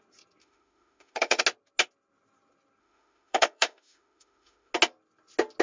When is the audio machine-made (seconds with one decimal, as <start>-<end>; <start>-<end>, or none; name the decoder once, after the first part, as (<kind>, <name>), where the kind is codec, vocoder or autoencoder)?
0.4-1.4 (autoencoder, DAC-VAE); 2.8-4.7